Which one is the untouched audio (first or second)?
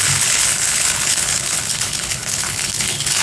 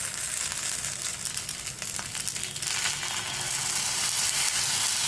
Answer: second